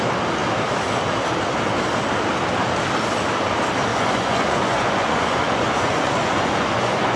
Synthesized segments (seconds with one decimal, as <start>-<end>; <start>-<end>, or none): 3.9-7.2